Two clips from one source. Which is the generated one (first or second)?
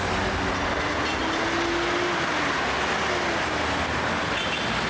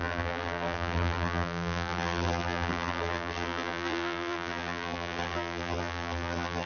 second